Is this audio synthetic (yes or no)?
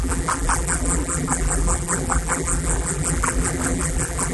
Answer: yes